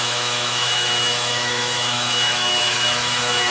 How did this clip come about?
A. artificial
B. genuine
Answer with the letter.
A